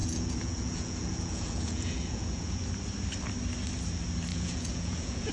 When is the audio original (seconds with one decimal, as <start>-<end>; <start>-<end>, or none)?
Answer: 2.6-4.3